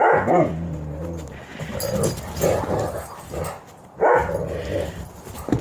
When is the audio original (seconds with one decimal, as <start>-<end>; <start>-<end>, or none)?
0.0-5.6